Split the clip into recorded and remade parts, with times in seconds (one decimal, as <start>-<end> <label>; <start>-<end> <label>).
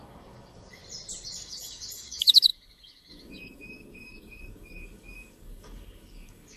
0.0-0.8 remade; 0.8-1.3 recorded; 1.3-6.6 remade